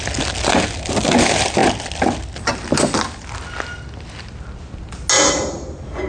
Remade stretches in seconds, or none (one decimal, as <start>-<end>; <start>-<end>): none